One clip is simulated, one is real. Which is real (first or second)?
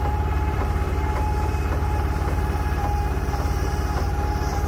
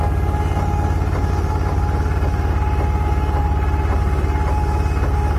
second